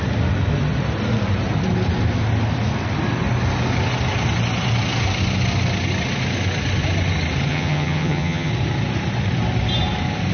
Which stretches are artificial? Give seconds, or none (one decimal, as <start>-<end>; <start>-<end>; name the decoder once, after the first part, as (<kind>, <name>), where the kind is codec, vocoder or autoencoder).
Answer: 7.5-8.5 (vocoder, HiFi-GAN)